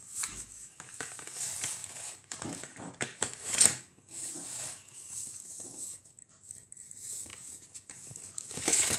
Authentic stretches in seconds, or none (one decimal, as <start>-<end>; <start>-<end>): none